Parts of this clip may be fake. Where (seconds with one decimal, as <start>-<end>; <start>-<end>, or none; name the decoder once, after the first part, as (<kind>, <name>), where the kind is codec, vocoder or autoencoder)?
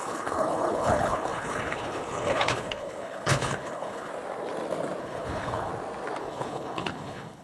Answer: 0.0-4.1 (codec, HILCodec); 5.0-5.7; 6.2-7.4